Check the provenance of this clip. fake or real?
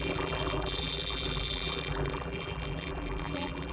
fake